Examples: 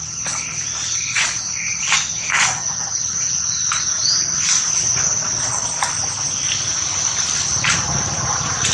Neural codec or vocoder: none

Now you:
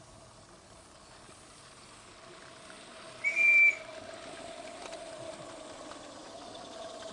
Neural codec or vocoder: none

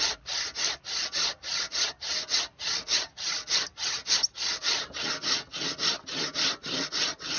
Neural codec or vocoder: none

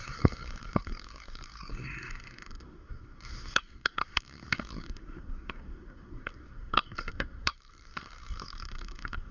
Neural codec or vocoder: codec, SNAC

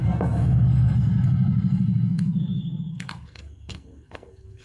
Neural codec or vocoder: codec, SNAC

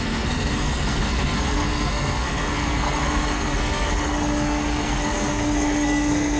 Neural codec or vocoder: codec, SNAC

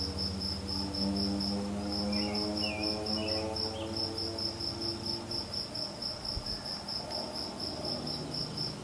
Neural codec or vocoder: none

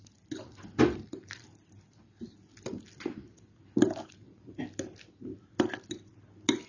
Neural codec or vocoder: none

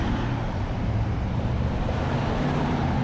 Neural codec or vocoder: none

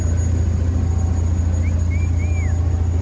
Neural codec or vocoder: none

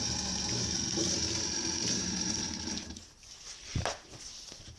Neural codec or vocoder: none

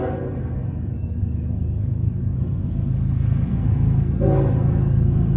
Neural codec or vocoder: codec, SNAC